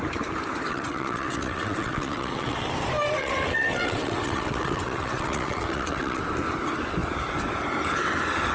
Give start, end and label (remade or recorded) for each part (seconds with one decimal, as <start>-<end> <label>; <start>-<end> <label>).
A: 0.0-0.7 recorded; 0.7-2.7 remade; 2.7-3.2 recorded; 3.2-6.2 remade; 6.2-8.5 recorded